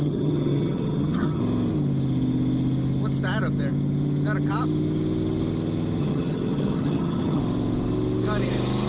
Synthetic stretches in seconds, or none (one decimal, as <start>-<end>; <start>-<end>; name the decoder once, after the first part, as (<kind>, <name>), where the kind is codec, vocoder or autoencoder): 0.0-1.4 (vocoder, HiFi-GAN); 6.0-7.4